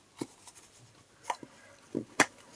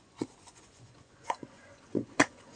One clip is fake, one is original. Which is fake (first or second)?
second